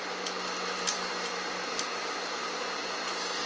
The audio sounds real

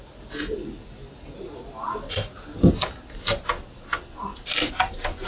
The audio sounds real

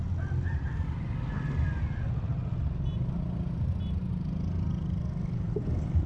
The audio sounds real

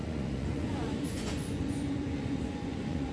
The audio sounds fake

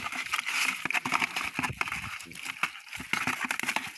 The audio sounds real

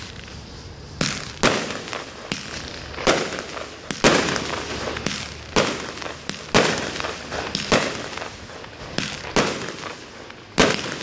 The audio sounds real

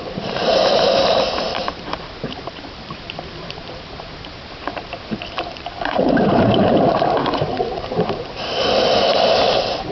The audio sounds fake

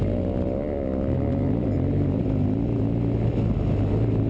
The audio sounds real